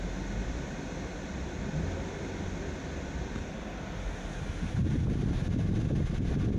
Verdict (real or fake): real